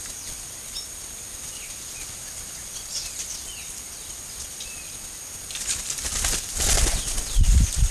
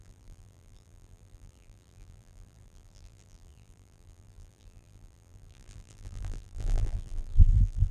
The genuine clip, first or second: first